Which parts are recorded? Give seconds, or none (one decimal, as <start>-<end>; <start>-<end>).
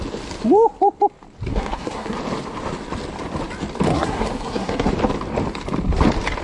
0.0-1.5; 2.2-3.9; 4.9-6.4